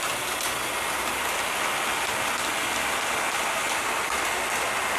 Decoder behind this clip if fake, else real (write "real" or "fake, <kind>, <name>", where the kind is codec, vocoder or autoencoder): real